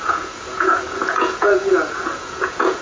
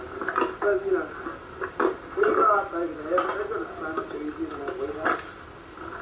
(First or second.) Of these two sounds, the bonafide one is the second